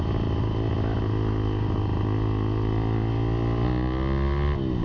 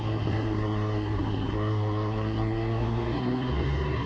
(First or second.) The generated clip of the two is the second